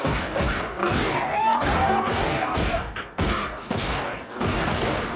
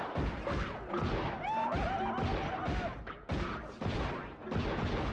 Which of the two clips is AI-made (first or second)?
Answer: first